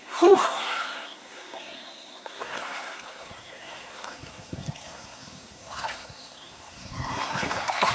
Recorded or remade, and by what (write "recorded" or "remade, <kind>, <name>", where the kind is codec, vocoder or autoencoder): remade, codec, SNAC